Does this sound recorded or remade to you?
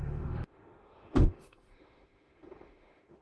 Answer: remade